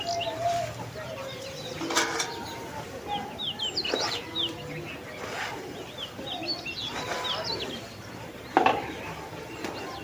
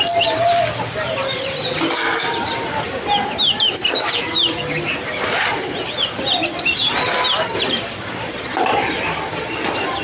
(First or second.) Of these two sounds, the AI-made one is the second